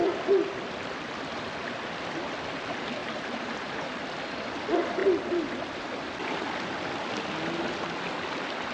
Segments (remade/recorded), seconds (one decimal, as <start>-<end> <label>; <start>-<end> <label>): 0.0-3.0 recorded; 3.0-4.0 remade; 4.0-8.7 recorded